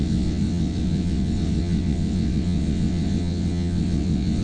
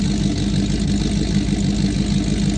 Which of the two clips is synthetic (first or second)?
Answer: first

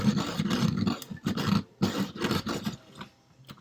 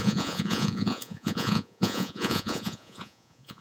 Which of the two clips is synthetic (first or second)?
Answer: second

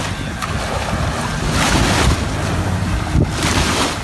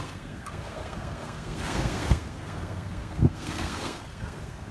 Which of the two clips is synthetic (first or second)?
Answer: second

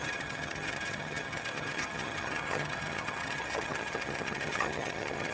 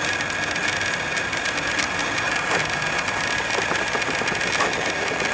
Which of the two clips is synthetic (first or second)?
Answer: first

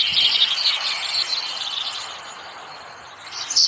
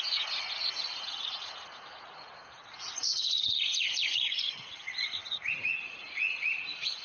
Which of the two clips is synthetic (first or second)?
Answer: second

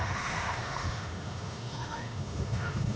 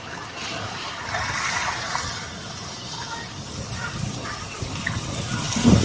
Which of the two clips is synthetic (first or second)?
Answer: first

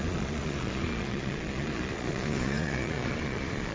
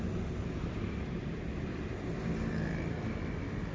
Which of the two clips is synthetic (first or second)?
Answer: first